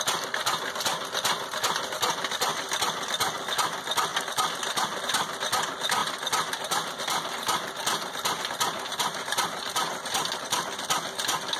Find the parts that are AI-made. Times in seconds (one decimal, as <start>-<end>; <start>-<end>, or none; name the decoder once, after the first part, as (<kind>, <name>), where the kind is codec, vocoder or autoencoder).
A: 2.5-3.3 (vocoder, BigVGAN v2); 4.1-5.0; 6.0-8.4; 8.9-11.6